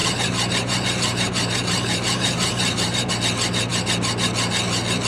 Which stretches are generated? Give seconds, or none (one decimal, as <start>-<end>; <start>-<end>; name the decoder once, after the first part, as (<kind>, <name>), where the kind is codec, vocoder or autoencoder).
0.0-3.1 (vocoder, BigVGAN v2)